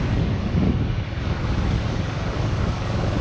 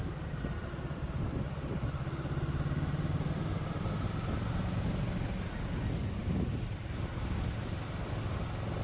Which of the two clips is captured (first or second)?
second